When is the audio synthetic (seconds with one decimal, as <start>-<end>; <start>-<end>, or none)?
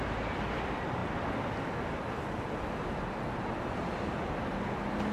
none